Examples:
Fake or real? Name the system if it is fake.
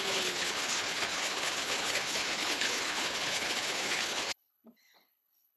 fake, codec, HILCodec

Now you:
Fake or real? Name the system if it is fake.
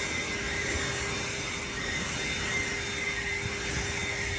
real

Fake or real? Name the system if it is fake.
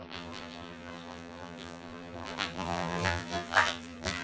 fake, vocoder, BigVGAN v2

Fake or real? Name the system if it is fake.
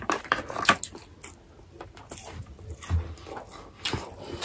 real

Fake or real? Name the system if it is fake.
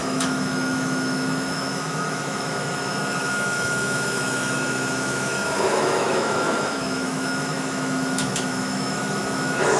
fake, autoencoder, DAC-VAE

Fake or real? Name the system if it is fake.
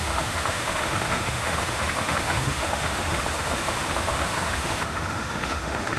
fake, autoencoder, DAC-VAE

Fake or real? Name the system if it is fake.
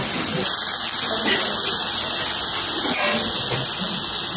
real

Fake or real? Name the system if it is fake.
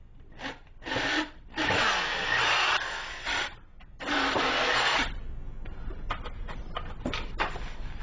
real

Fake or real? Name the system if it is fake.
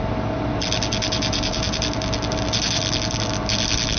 real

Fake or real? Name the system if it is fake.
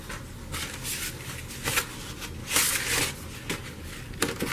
real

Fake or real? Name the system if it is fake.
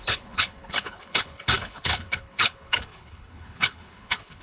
fake, codec, HILCodec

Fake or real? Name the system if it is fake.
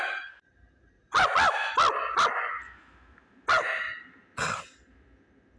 real